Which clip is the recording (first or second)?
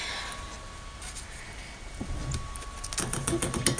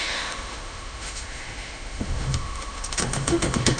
first